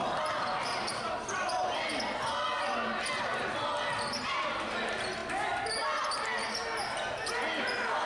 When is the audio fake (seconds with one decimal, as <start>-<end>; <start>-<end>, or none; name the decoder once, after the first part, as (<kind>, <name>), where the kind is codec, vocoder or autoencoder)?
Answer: none